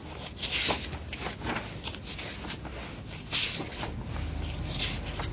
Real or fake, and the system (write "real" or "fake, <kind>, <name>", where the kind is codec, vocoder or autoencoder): real